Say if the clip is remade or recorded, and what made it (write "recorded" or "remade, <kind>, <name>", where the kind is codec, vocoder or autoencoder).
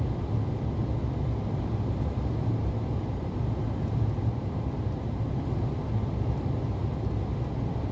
recorded